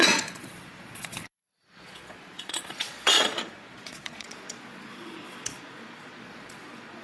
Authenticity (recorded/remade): remade